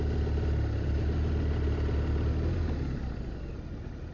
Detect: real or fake real